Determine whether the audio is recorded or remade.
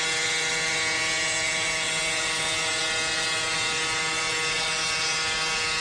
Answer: recorded